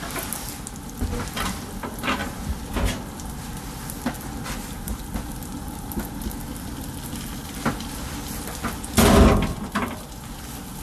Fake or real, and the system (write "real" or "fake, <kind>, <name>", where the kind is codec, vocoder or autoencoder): real